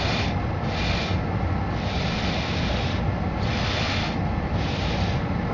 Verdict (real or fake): real